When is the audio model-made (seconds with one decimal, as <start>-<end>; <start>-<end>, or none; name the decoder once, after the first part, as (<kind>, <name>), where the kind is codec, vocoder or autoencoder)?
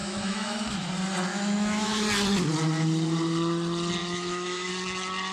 0.0-0.9 (autoencoder, DAC-VAE); 1.3-2.0; 4.0-4.7